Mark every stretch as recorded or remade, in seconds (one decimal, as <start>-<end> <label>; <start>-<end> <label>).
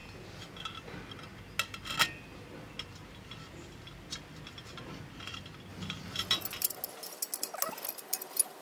0.0-8.6 recorded